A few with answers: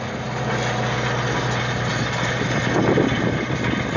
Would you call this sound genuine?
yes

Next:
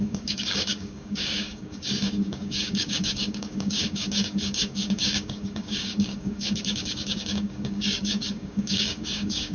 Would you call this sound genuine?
no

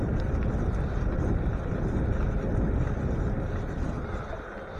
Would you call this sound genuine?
yes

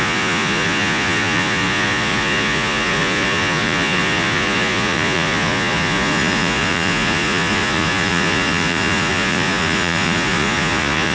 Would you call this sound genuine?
no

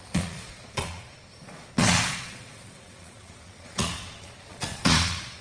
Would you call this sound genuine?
no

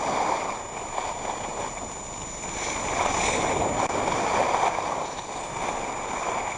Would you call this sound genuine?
yes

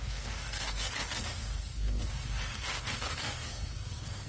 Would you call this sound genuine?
no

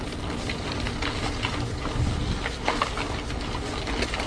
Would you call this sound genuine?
yes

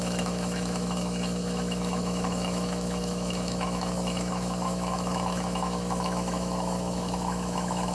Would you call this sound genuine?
no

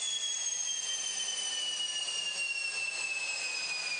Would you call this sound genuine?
yes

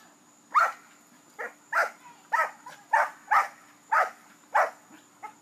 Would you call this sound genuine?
yes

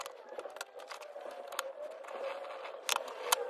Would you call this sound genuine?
yes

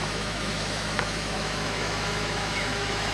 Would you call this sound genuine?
no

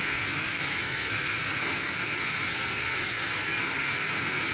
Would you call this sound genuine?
no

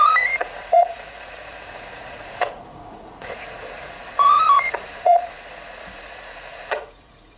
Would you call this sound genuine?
no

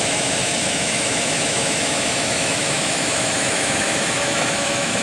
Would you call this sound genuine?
no